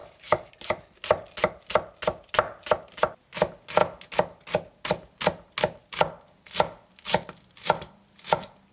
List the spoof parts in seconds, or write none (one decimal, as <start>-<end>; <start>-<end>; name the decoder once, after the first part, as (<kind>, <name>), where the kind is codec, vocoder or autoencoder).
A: 0.0-0.5 (codec, DAC)